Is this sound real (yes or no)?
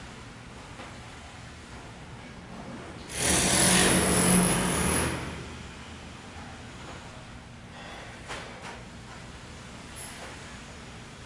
yes